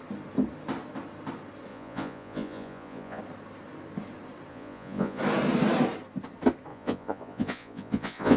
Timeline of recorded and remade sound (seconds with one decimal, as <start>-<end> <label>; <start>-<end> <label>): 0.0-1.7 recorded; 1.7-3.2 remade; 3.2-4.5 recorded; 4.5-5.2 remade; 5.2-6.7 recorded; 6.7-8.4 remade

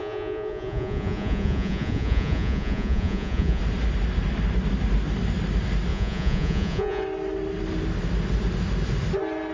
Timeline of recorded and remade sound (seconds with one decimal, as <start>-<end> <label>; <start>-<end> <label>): 0.0-3.6 remade; 3.6-5.9 recorded; 5.9-7.0 remade; 7.0-9.5 recorded

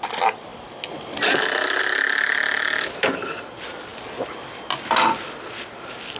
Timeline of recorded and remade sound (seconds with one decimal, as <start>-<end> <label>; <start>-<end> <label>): 0.0-6.2 recorded

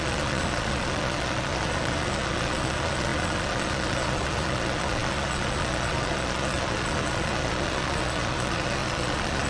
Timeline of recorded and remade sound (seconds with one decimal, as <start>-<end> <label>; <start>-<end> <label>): 0.0-9.5 remade

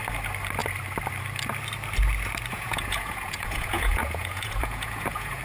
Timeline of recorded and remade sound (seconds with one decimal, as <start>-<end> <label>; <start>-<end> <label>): 0.0-2.5 recorded; 2.5-5.4 remade

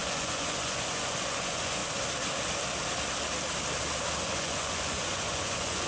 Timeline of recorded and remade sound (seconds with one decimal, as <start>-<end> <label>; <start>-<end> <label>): 0.0-1.8 remade; 1.8-4.2 recorded; 4.2-5.9 remade